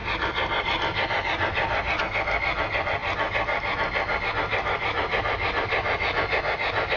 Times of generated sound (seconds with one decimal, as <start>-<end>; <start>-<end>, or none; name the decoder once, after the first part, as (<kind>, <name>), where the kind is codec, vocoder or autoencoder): 0.0-2.0 (vocoder, BigVGAN v2)